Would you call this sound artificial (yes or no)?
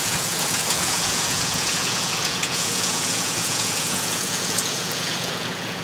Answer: yes